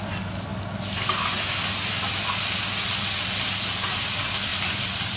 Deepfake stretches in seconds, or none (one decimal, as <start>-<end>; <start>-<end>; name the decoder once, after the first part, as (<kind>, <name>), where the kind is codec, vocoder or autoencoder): 4.5-5.2 (vocoder, BigVGAN v2)